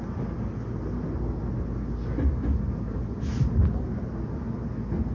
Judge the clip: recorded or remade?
recorded